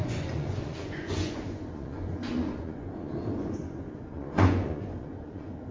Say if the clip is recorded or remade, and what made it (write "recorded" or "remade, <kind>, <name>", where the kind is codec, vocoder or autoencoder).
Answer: remade, vocoder, Vocos